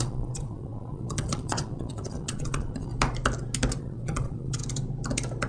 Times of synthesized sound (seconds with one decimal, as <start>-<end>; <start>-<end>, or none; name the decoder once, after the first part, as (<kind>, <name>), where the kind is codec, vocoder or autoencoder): 0.0-2.9 (vocoder, Vocos); 3.8-4.6